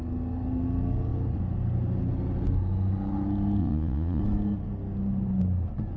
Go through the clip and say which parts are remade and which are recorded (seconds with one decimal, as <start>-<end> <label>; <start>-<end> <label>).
0.0-3.6 recorded; 3.6-4.2 remade; 4.2-6.0 recorded